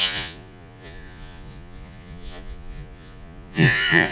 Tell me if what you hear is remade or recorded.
remade